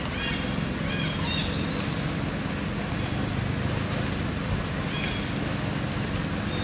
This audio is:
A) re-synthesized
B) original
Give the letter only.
B